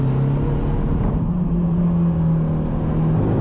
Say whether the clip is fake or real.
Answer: real